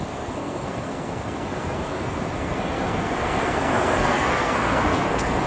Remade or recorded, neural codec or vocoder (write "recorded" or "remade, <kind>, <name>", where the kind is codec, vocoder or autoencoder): remade, codec, SNAC